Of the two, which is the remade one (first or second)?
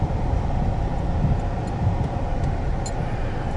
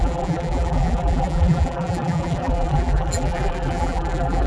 second